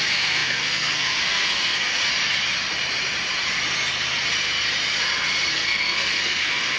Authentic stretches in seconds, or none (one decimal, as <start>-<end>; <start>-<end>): 2.1-5.5